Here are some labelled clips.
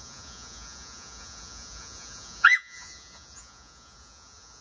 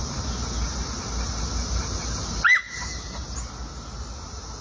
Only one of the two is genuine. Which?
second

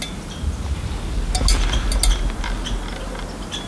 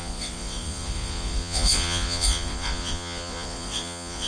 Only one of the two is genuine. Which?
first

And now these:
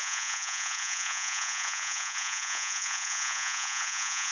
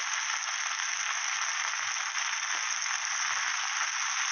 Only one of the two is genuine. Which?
second